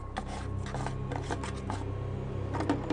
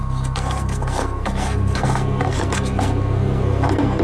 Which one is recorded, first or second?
first